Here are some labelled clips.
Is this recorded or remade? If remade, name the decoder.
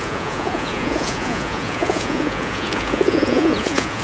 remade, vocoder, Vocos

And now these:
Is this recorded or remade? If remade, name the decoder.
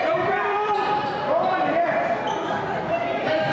remade, vocoder, BigVGAN v2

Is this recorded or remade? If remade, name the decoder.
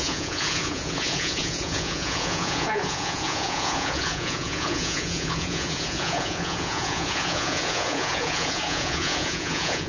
remade, vocoder, Vocos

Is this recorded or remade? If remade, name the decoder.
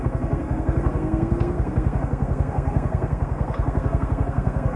remade, codec, SNAC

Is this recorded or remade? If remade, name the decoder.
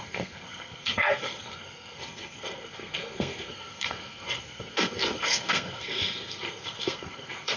remade, codec, SNAC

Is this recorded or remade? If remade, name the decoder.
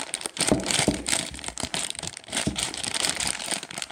remade, vocoder, BigVGAN v2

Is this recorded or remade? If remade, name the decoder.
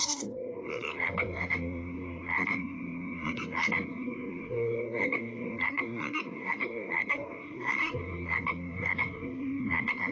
remade, codec, SNAC